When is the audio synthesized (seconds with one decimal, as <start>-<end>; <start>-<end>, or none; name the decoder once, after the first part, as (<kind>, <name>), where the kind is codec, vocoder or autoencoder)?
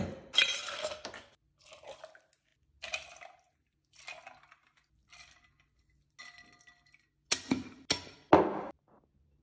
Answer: none